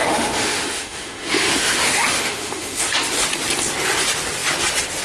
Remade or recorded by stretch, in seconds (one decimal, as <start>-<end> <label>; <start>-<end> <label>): 0.0-3.0 remade; 3.0-5.0 recorded